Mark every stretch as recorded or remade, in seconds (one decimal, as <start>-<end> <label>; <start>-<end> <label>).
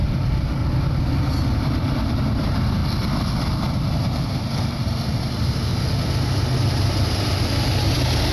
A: 0.0-0.6 remade; 0.6-1.6 recorded; 1.6-2.8 remade; 2.8-4.0 recorded; 4.0-5.7 remade; 5.7-6.7 recorded; 6.7-8.3 remade